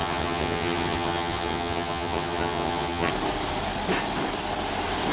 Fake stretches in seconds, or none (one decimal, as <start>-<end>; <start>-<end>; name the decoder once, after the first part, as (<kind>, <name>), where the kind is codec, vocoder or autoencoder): 0.0-3.1 (vocoder, HiFi-GAN)